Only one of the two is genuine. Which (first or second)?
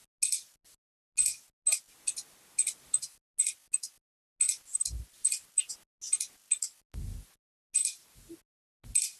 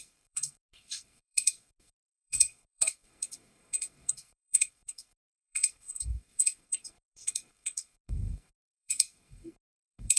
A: first